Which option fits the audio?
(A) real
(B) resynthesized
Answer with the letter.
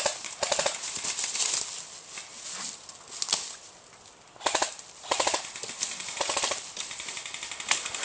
A